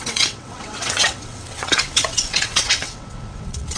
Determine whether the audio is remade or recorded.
remade